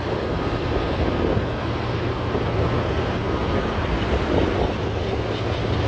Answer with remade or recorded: recorded